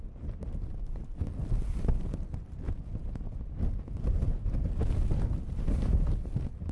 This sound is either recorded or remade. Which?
recorded